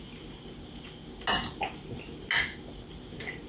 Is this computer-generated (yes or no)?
no